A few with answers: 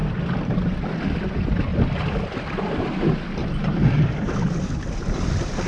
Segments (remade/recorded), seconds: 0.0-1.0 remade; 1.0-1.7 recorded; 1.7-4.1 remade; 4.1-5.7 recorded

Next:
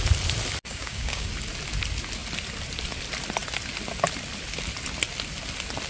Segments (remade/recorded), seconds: 0.0-0.7 recorded; 0.7-1.3 remade; 1.3-5.9 recorded

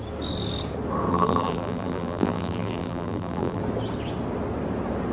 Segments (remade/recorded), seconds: 0.0-1.1 recorded; 1.1-3.6 remade; 3.6-5.1 recorded